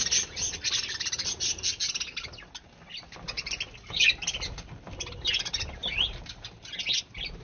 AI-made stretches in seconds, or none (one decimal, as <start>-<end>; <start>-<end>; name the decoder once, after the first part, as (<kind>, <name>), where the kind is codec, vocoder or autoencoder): 5.8-6.7 (vocoder, BigVGAN v2)